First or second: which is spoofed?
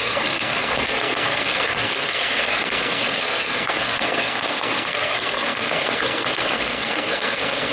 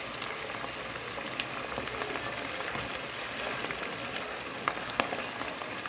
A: first